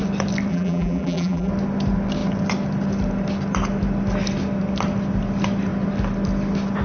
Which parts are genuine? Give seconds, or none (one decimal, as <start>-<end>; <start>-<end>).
0.0-0.5; 1.5-6.8